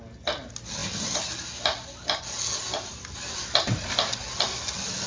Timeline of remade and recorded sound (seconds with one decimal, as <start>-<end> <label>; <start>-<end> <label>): 0.0-5.1 recorded